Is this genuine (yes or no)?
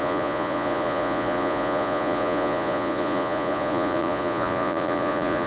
no